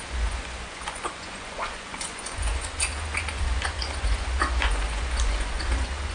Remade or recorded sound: remade